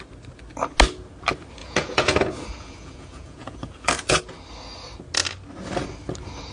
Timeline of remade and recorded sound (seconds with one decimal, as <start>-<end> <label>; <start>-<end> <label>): 0.0-1.6 recorded; 1.6-4.2 remade; 4.2-6.5 recorded